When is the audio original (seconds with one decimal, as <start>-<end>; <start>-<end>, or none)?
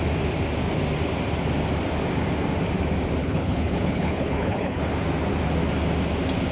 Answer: 0.0-3.2; 4.8-6.5